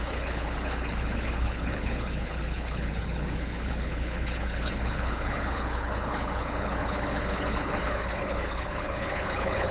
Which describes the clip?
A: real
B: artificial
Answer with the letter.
B